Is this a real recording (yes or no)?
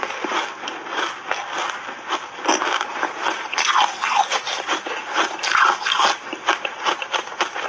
yes